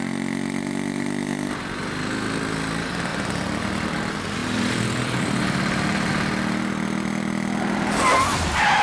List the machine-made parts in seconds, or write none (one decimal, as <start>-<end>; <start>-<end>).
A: 3.1-4.0; 4.4-6.1